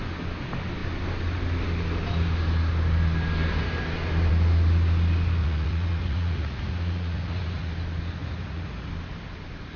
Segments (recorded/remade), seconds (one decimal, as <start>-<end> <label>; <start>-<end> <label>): 0.0-5.4 recorded; 5.4-7.7 remade; 7.7-8.2 recorded; 8.2-8.9 remade; 8.9-9.8 recorded